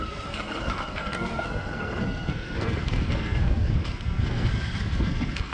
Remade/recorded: remade